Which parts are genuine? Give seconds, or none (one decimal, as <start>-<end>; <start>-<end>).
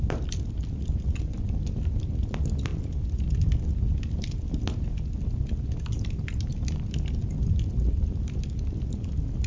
0.0-9.5